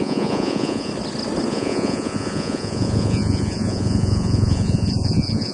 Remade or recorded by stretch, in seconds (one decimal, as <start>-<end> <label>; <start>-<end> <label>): 0.0-0.9 remade; 0.9-1.5 recorded; 1.5-5.5 remade